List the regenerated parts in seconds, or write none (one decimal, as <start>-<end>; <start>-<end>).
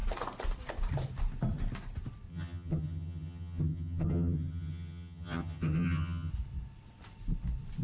2.3-6.3